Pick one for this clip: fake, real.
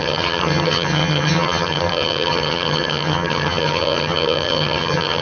fake